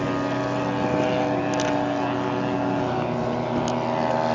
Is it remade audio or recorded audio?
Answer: recorded